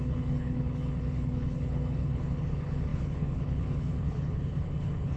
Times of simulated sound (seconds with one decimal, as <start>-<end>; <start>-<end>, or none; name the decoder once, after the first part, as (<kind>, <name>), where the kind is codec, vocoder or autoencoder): 0.0-5.2 (codec, HILCodec)